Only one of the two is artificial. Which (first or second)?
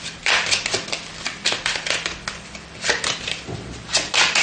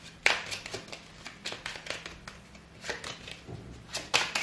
first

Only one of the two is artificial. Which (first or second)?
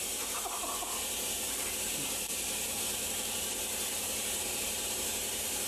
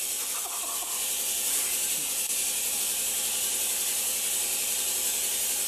first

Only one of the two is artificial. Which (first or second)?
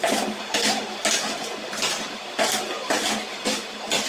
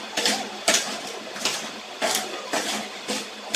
second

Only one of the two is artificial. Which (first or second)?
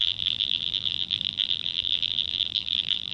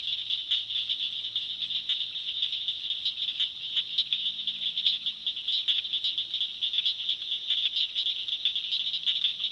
first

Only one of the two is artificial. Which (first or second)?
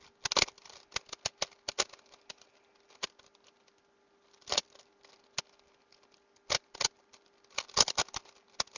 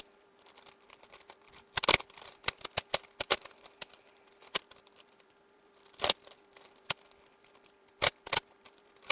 second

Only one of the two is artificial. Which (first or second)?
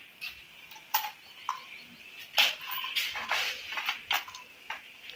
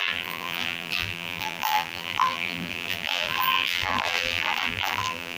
second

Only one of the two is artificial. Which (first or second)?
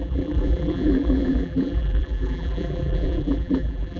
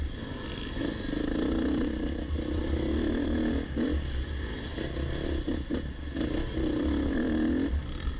first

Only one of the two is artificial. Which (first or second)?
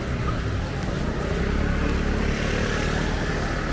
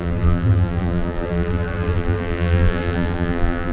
second